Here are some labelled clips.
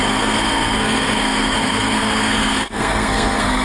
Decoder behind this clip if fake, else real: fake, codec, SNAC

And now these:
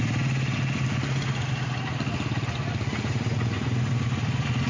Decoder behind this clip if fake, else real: real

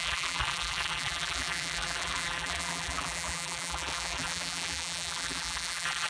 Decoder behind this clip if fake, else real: fake, vocoder, BigVGAN v2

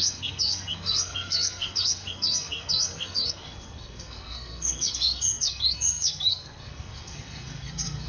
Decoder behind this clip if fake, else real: fake, codec, SNAC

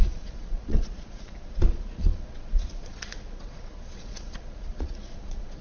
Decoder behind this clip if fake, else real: fake, vocoder, Vocos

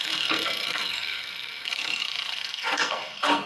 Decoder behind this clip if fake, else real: fake, codec, SNAC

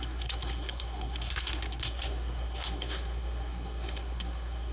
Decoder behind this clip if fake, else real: fake, codec, SNAC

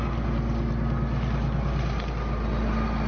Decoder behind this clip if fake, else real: real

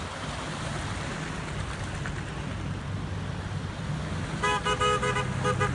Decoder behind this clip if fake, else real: real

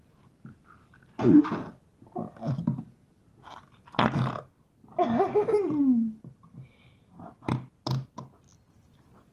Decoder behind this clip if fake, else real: real